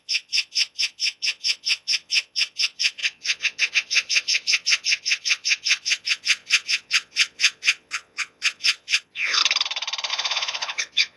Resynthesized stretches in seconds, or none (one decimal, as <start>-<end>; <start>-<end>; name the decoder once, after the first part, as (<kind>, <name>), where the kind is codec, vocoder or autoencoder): 0.0-9.4 (vocoder, Vocos); 10.1-11.2